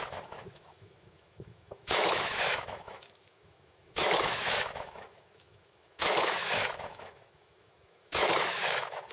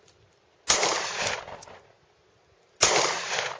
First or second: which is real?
second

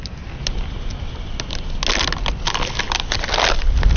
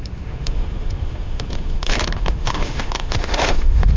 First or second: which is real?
first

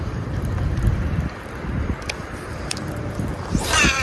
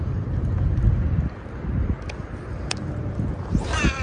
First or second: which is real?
second